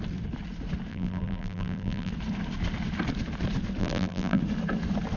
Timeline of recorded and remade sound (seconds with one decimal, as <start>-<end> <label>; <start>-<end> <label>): 0.0-0.9 recorded; 0.9-2.1 remade; 2.1-3.8 recorded; 3.8-4.4 remade; 4.4-5.2 recorded